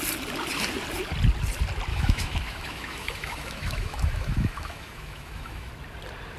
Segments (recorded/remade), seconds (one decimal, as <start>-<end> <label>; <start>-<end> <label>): 0.0-1.9 recorded; 1.9-5.7 remade; 5.7-6.4 recorded